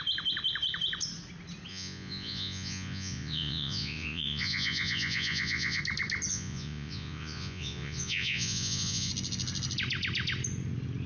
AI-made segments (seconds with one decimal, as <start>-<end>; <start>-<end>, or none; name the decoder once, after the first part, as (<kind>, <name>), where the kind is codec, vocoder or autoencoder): 1.7-5.8 (vocoder, Vocos); 6.3-9.1